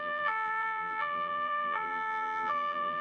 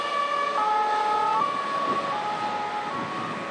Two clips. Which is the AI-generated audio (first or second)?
first